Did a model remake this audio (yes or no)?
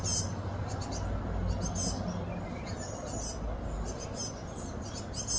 no